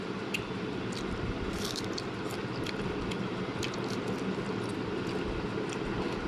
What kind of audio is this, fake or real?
real